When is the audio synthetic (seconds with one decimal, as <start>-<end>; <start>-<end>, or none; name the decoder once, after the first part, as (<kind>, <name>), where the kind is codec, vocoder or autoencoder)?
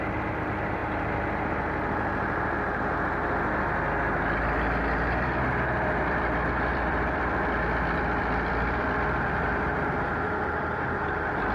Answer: 0.0-0.8 (vocoder, BigVGAN v2); 4.4-11.5